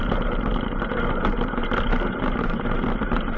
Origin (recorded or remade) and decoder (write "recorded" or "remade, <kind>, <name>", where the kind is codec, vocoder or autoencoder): remade, vocoder, BigVGAN v2